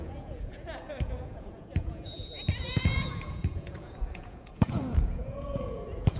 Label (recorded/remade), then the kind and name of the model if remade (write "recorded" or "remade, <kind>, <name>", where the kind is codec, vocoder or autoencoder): remade, vocoder, Vocos